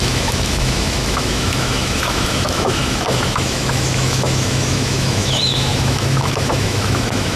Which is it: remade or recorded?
remade